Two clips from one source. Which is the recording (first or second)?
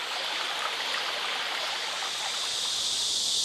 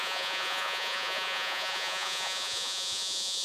first